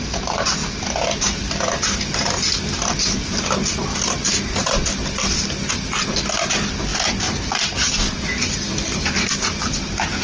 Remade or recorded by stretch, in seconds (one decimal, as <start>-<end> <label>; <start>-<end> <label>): 0.0-10.2 recorded